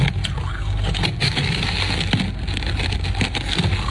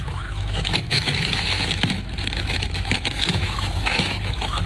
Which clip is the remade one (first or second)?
second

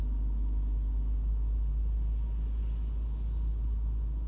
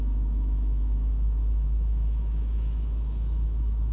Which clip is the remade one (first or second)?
second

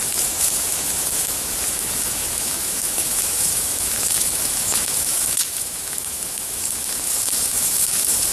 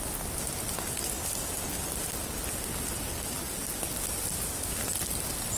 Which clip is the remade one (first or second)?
first